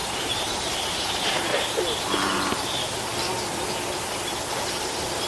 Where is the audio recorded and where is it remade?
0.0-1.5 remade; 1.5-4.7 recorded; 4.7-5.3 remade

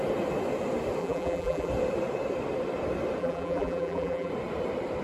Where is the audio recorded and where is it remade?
0.0-1.0 recorded; 1.0-1.7 remade; 1.7-3.2 recorded; 3.2-4.3 remade; 4.3-5.0 recorded

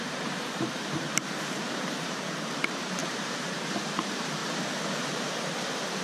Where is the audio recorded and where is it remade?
0.0-4.4 remade; 4.4-5.1 recorded; 5.1-6.0 remade

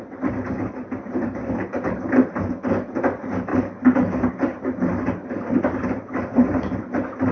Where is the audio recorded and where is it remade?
0.0-7.3 remade

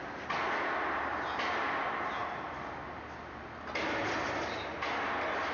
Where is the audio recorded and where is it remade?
0.0-5.5 recorded